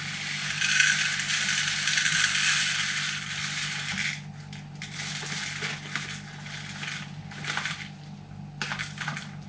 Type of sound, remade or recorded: recorded